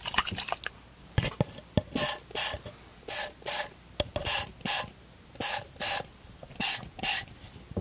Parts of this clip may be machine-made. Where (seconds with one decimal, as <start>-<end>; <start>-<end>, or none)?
none